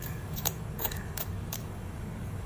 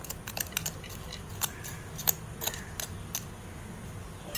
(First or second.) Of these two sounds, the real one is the second